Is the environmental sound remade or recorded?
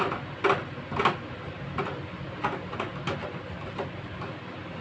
recorded